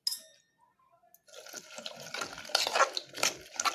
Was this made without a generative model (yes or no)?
yes